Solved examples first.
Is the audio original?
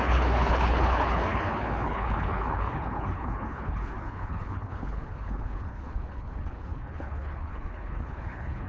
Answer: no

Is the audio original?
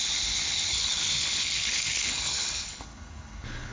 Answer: no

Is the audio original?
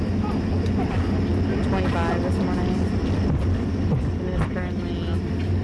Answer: yes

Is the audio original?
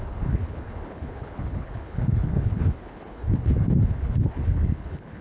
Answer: no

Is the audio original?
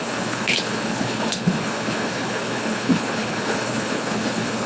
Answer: no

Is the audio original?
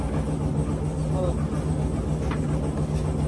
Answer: yes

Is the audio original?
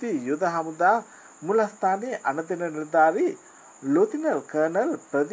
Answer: yes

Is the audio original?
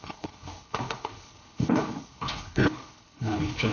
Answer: no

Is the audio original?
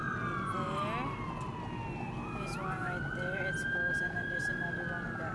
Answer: yes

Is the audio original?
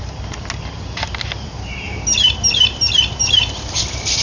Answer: yes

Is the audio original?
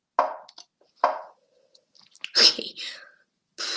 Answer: yes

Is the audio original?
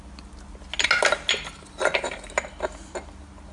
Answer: yes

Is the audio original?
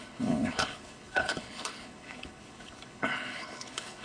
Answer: no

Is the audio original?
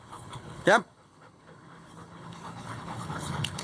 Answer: no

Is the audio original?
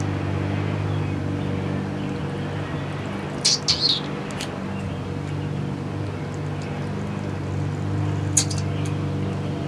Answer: yes